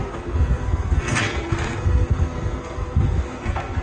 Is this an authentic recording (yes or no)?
no